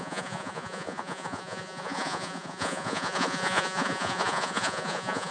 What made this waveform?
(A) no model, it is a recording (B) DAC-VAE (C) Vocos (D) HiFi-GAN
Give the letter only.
C